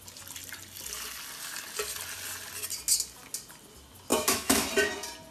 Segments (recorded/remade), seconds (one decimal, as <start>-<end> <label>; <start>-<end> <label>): 0.0-4.1 recorded; 4.1-4.7 remade; 4.7-5.3 recorded